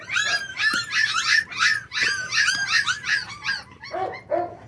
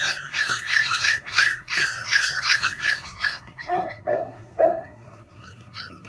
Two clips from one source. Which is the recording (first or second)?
first